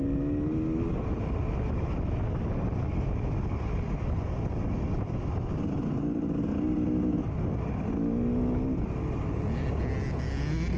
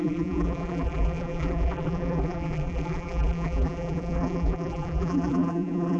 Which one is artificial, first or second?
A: second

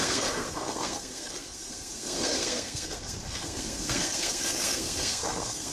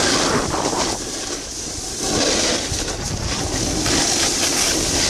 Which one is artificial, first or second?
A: first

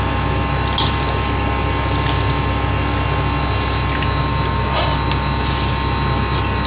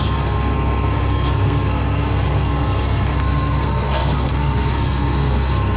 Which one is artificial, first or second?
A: second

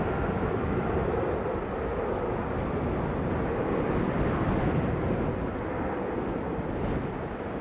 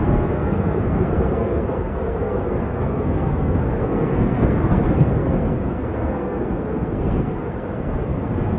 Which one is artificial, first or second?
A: second